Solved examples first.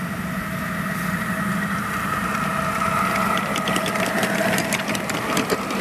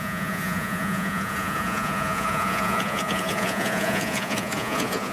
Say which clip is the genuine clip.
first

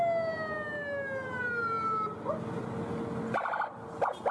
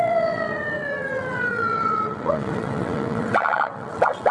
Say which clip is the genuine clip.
first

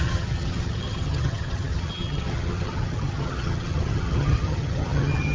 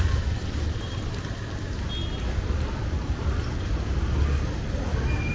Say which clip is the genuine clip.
second